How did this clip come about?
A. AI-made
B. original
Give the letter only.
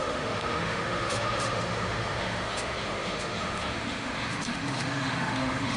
A